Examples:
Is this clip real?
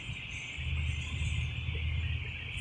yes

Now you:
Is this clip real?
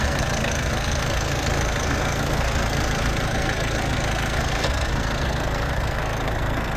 no